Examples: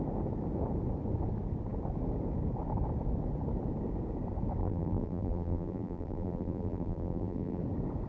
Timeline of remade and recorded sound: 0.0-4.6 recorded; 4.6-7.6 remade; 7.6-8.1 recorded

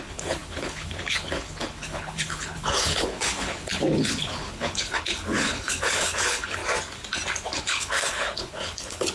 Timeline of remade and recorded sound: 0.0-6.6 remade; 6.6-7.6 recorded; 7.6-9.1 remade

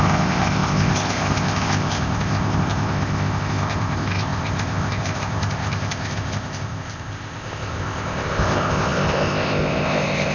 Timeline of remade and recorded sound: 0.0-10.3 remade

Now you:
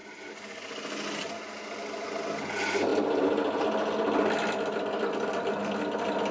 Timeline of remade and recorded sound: 0.0-6.3 recorded

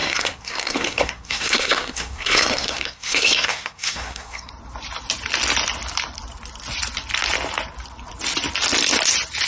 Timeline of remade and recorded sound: 0.0-4.5 remade; 4.5-9.5 recorded

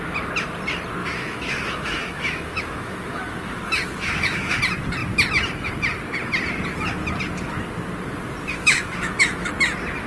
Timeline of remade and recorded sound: 0.0-1.0 recorded; 1.0-4.6 remade; 4.6-8.5 recorded; 8.5-9.5 remade; 9.5-10.1 recorded

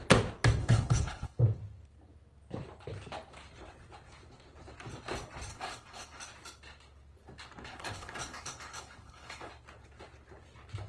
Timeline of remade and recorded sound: 0.0-0.6 recorded; 0.6-1.4 remade; 1.4-5.5 recorded; 5.5-6.2 remade; 6.2-7.7 recorded; 7.7-9.5 remade; 9.5-10.9 recorded

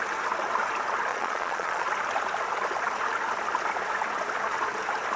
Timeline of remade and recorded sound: 0.0-1.1 recorded; 1.1-1.9 remade; 1.9-5.2 recorded